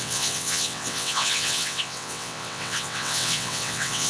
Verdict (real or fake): fake